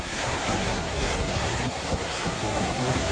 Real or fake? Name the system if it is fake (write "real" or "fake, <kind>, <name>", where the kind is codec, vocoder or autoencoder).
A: fake, codec, SNAC